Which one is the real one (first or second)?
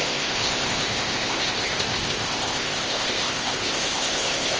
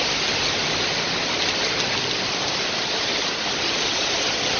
second